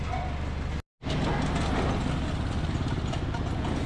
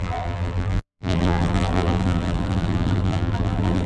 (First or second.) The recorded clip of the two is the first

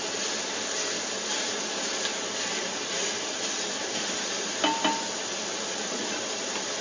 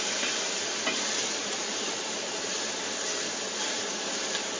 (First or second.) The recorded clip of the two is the first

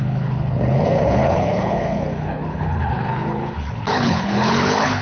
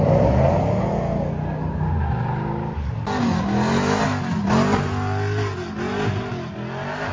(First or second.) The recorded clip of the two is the second